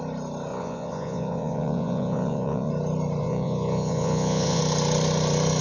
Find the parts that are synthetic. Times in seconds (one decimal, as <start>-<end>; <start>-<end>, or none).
0.5-2.7; 3.2-4.6